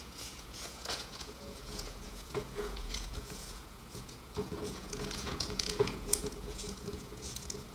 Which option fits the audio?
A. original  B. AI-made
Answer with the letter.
B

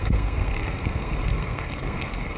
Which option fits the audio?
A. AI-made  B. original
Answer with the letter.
A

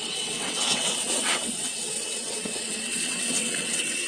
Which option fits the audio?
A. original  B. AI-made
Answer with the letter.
B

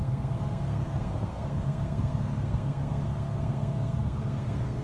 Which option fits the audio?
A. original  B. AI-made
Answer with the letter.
B